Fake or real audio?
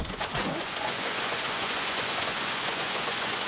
fake